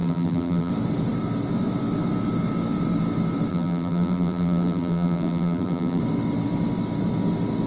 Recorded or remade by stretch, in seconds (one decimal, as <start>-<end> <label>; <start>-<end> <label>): 0.0-0.7 remade; 0.7-3.5 recorded; 3.5-6.0 remade; 6.0-7.7 recorded